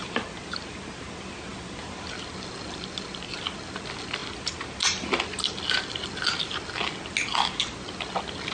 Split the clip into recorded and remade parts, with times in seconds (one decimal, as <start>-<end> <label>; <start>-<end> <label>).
0.0-8.5 recorded